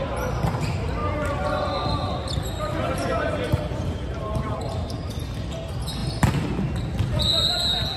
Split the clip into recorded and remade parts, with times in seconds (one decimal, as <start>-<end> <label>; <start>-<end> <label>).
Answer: 0.0-2.8 recorded; 2.8-5.1 remade; 5.1-8.0 recorded